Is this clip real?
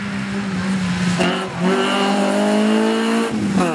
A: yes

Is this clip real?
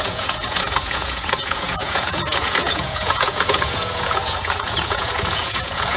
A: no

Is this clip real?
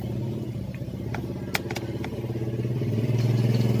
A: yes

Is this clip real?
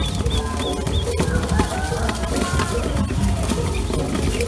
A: yes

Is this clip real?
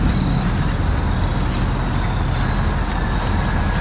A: yes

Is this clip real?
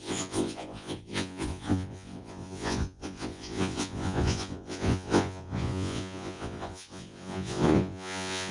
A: no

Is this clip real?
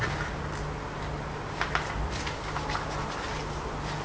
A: yes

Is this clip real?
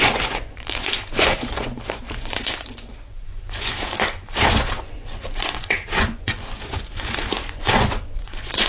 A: no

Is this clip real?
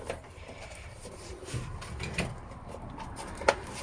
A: yes